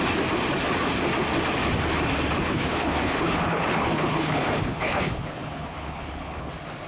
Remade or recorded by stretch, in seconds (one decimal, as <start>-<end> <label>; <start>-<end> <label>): 0.0-2.4 recorded; 2.4-6.5 remade; 6.5-6.9 recorded